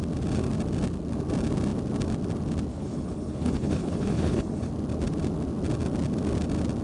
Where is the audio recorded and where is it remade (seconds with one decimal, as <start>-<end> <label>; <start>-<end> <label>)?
0.0-2.7 recorded; 2.7-4.7 remade; 4.7-6.8 recorded